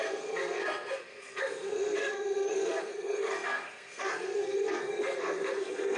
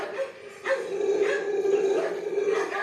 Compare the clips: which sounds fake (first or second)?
first